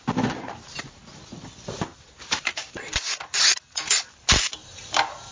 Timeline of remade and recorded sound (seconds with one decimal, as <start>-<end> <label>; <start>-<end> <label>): 0.0-5.3 recorded